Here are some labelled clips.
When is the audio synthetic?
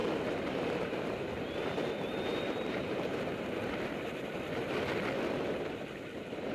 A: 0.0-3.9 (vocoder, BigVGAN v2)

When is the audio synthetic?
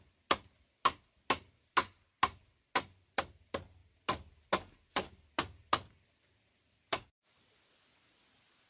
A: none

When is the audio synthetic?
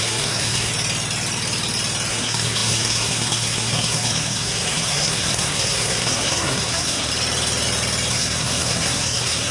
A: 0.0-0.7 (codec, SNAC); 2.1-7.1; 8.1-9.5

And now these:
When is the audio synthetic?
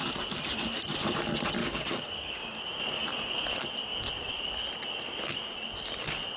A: 1.6-2.4 (codec, DAC)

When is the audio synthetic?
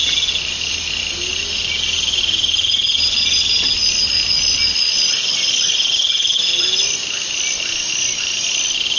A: none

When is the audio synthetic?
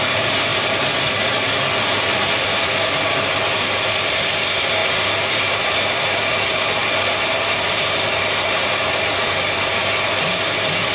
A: 0.0-4.8 (vocoder, BigVGAN v2); 5.3-6.8; 8.4-10.9